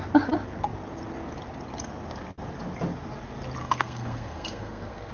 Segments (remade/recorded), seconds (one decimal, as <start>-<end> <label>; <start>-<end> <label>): 0.0-3.6 recorded; 3.6-5.1 remade